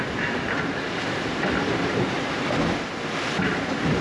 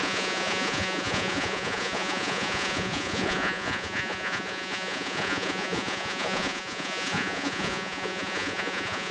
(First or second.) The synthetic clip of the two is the second